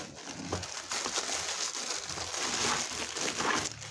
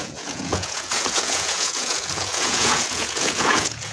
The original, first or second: first